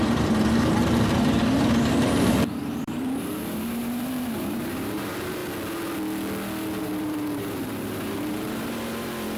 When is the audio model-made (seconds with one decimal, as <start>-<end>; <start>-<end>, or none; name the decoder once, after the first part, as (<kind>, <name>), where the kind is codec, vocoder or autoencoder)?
0.0-5.4 (vocoder, BigVGAN v2); 6.8-9.4